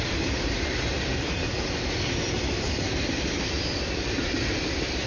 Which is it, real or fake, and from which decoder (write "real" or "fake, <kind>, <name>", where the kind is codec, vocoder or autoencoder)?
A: fake, vocoder, BigVGAN v2